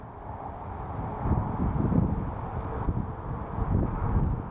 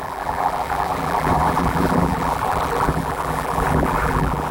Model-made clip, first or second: second